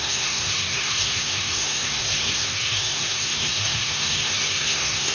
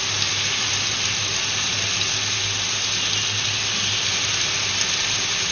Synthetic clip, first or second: first